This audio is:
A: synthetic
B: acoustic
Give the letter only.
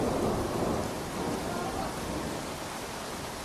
B